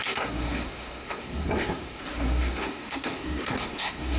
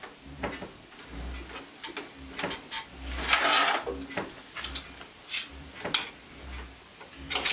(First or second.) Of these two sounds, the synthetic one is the first